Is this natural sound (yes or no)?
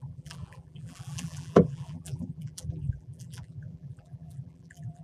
no